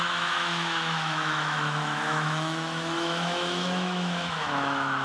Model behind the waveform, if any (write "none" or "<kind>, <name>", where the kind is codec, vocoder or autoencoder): autoencoder, DAC-VAE